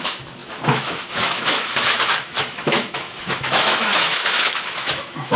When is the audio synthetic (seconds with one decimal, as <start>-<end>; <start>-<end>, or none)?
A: 0.0-5.4